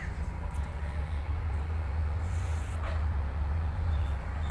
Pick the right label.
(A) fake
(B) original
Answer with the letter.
A